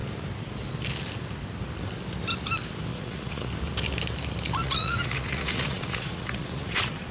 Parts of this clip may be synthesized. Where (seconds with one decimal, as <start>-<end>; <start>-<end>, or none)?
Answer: 2.9-3.5; 4.6-7.1